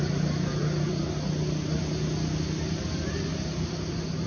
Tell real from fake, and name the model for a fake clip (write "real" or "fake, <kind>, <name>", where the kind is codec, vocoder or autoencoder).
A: real